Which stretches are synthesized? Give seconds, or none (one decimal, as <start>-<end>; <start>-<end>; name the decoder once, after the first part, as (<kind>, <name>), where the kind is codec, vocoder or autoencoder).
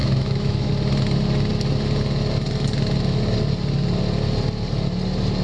0.0-0.7 (autoencoder, DAC-VAE)